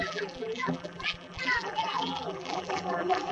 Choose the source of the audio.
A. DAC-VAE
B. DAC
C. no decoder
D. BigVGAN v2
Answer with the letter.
D